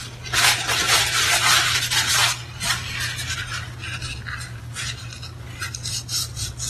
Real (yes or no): yes